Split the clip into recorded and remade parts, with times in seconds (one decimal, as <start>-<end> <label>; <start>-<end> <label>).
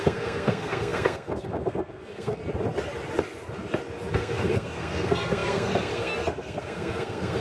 0.0-2.4 remade; 2.4-4.1 recorded; 4.1-7.4 remade